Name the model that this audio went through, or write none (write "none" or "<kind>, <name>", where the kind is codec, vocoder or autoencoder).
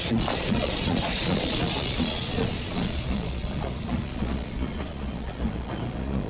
vocoder, Vocos